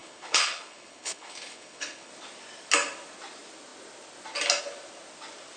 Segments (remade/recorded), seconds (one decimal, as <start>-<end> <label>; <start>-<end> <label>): 0.0-2.1 remade; 2.1-5.6 recorded